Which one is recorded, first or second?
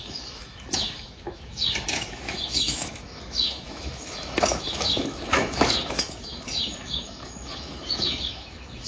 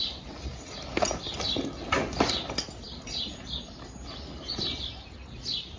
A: second